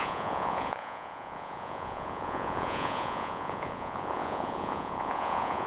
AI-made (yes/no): yes